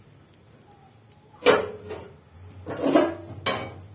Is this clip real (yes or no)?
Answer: yes